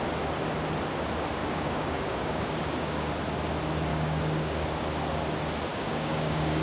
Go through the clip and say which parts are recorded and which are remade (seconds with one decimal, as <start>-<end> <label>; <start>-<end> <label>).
0.0-1.4 recorded; 1.4-3.1 remade; 3.1-3.9 recorded; 3.9-4.8 remade; 4.8-5.7 recorded; 5.7-6.6 remade